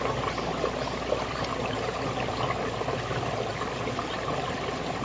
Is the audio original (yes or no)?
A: yes